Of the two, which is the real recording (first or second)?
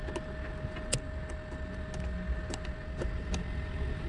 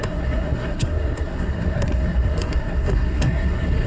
first